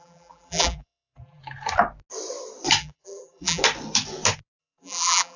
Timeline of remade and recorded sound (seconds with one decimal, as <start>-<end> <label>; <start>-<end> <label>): 0.0-1.4 remade; 1.4-2.8 recorded; 2.8-3.6 remade; 3.6-4.6 recorded; 4.6-5.4 remade